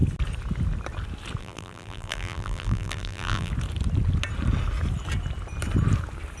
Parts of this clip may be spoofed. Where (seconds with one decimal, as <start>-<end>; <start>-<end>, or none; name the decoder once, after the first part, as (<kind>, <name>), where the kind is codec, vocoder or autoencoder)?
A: 1.4-3.5 (vocoder, BigVGAN v2)